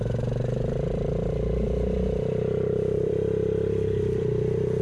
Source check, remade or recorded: remade